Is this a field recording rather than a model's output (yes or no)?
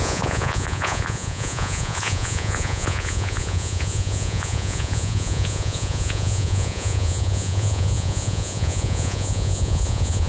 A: no